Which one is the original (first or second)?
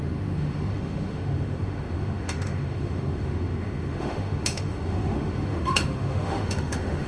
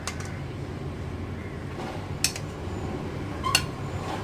second